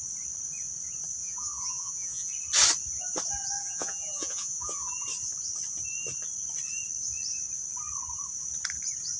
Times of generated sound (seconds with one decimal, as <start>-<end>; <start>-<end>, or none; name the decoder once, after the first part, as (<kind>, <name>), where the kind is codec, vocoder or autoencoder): 1.2-2.3 (vocoder, Vocos); 3.6-4.9